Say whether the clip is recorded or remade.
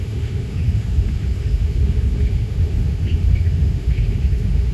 remade